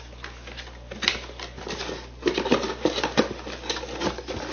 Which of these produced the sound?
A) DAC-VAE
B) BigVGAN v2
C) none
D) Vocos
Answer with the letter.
C